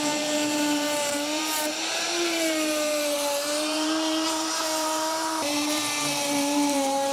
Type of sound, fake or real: fake